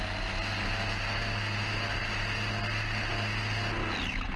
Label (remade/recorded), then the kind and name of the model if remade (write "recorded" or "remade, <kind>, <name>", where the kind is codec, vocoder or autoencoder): recorded